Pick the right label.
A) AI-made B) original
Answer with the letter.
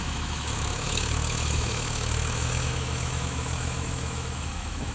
A